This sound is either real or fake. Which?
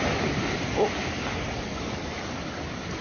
real